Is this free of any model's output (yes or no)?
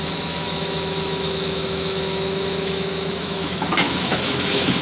no